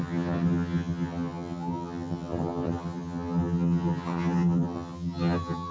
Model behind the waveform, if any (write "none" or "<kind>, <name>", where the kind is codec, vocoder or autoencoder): vocoder, HiFi-GAN